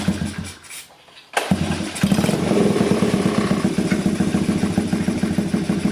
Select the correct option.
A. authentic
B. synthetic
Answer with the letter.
B